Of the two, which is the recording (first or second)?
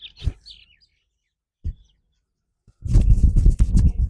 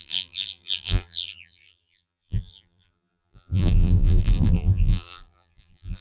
first